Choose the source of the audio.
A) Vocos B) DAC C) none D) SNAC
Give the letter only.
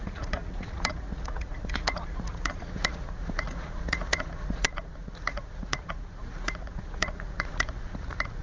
A